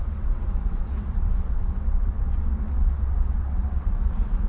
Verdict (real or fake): fake